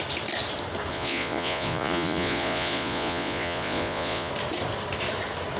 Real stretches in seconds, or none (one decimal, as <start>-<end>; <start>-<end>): 0.0-0.9; 4.3-5.6